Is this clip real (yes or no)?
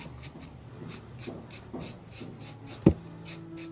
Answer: yes